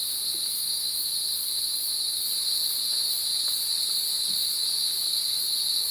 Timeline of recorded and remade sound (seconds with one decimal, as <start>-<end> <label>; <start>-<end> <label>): 0.0-0.5 recorded; 0.5-1.1 remade; 1.1-5.9 recorded

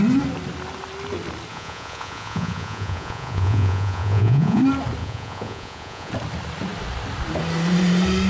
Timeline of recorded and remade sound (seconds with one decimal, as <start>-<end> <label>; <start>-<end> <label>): 0.0-1.5 recorded; 1.5-4.6 remade; 4.6-5.0 recorded; 5.0-6.1 remade; 6.1-8.3 recorded

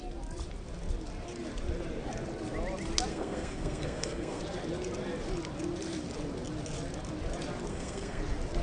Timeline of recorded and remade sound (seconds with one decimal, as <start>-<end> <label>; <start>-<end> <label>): 0.0-3.1 recorded; 3.1-4.4 remade; 4.4-7.7 recorded; 7.7-8.2 remade; 8.2-8.6 recorded

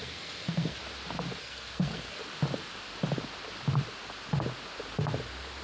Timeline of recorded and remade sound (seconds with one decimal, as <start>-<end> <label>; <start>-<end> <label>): 0.0-0.8 remade; 0.8-1.4 recorded; 1.4-2.2 remade; 2.2-5.6 recorded

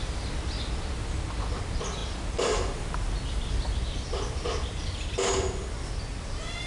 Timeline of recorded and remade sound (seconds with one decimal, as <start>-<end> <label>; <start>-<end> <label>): 0.0-6.7 recorded

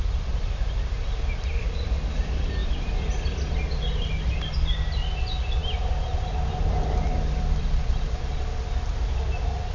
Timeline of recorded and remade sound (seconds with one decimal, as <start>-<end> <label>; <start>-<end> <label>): 0.0-7.6 recorded; 7.6-8.4 remade; 8.4-9.7 recorded